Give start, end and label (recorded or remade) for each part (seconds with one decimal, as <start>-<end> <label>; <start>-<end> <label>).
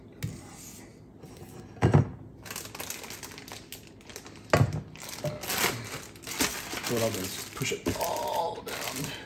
0.0-9.3 recorded